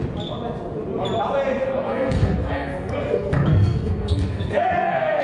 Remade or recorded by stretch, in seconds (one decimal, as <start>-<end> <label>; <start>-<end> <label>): 0.0-1.9 recorded; 1.9-5.2 remade